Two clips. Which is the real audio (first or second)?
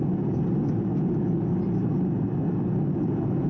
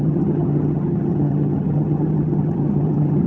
first